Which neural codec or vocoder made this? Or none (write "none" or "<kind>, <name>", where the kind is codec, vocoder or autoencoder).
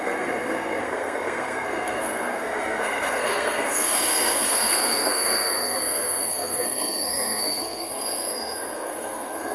codec, SNAC